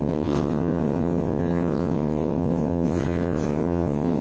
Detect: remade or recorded remade